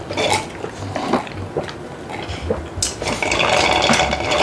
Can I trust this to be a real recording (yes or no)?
yes